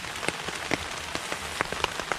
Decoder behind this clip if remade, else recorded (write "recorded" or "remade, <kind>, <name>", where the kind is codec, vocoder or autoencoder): recorded